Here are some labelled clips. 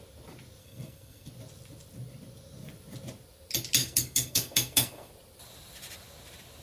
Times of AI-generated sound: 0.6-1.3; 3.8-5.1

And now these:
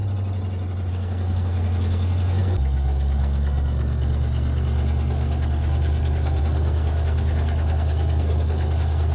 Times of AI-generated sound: 0.9-9.1

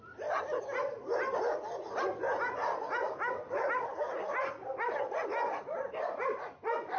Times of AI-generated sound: none

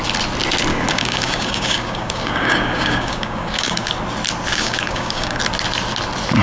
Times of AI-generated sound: 0.7-3.9; 4.5-5.4